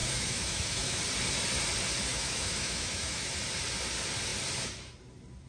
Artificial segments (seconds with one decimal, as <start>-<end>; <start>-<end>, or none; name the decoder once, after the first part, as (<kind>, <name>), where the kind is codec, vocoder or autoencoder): 0.0-1.0 (autoencoder, DAC-VAE); 2.1-3.3